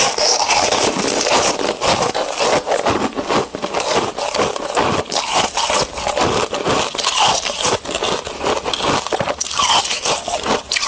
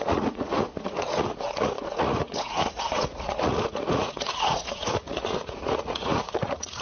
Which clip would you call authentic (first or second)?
first